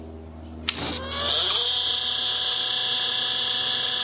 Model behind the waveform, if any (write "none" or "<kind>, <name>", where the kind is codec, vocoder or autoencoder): none